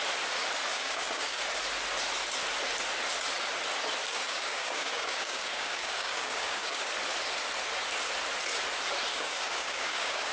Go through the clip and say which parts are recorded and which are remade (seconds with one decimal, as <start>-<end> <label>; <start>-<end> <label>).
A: 0.0-0.7 recorded; 0.7-1.4 remade; 1.4-4.1 recorded; 4.1-6.9 remade; 6.9-9.1 recorded; 9.1-10.3 remade